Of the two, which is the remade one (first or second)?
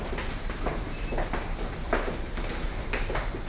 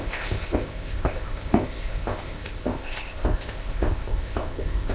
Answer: second